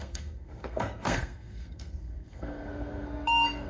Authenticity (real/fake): fake